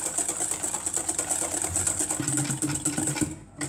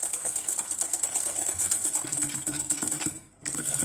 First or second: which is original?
first